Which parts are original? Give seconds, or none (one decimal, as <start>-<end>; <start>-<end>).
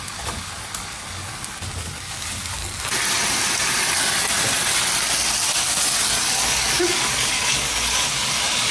2.6-5.7